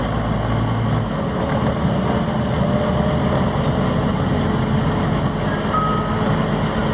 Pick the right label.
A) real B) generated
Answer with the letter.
A